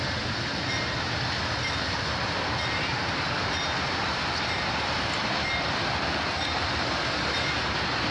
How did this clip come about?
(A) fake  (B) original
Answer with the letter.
A